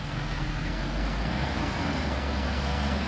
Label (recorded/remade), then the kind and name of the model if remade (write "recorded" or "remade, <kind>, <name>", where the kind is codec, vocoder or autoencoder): remade, codec, SNAC